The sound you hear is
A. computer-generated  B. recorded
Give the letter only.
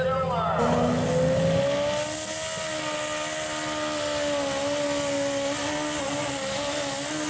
B